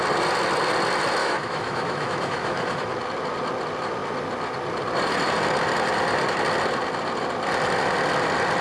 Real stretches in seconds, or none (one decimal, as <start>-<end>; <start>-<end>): 0.0-1.2; 2.9-8.6